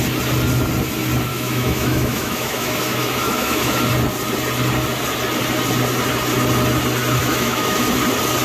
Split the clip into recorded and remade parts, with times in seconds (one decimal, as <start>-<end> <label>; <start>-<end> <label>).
0.0-1.3 recorded; 1.3-3.9 remade; 3.9-7.2 recorded; 7.2-7.9 remade; 7.9-8.4 recorded

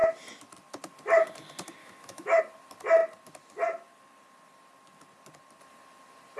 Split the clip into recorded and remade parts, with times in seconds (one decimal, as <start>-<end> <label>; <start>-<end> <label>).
0.0-1.8 recorded; 1.8-2.4 remade; 2.4-6.4 recorded

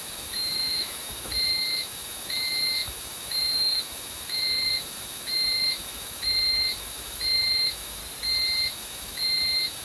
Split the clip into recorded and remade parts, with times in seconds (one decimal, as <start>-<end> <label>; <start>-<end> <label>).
0.0-8.0 remade; 8.0-8.6 recorded; 8.6-9.8 remade

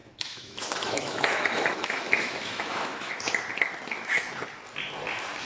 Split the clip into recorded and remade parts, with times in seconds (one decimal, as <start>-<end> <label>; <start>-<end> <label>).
0.0-3.1 remade; 3.1-5.4 recorded

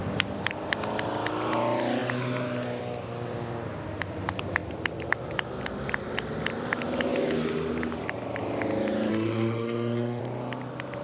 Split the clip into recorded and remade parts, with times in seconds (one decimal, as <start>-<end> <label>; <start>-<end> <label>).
0.0-9.1 recorded; 9.1-10.2 remade; 10.2-11.0 recorded